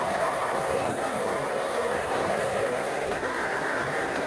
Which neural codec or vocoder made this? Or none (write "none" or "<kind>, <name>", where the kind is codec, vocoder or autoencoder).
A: codec, SNAC